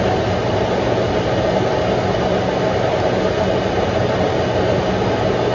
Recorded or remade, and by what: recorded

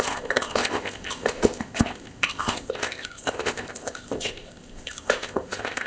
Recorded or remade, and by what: remade, codec, ZipCodec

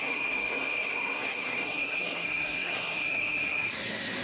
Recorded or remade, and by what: remade, codec, SNAC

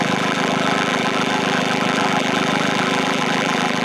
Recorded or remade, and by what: remade, vocoder, BigVGAN v2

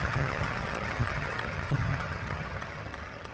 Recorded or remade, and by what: remade, vocoder, HiFi-GAN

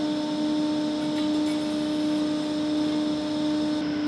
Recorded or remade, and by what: recorded